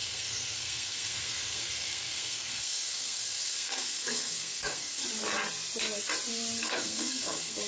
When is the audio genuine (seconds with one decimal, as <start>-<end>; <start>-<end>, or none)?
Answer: 5.0-6.6